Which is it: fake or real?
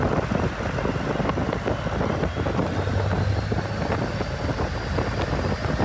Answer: real